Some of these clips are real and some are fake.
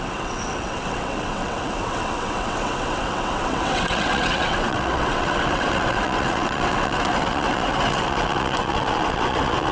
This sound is fake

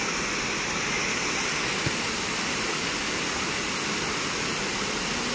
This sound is real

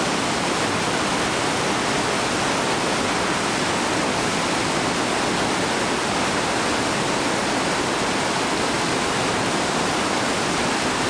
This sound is real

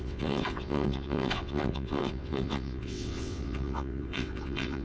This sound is fake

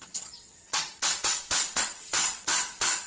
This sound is fake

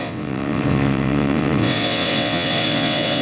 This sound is fake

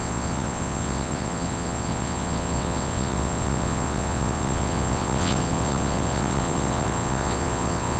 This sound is fake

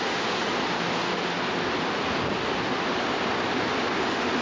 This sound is real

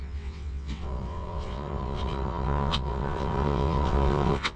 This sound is fake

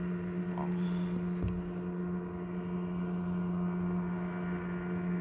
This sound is real